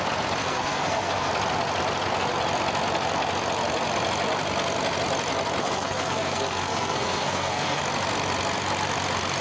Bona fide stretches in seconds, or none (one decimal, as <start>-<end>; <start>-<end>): 0.0-0.4; 1.3-5.6; 7.8-9.4